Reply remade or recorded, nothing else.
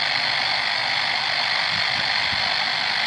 recorded